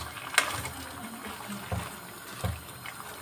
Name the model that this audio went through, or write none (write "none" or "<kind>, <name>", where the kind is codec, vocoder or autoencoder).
none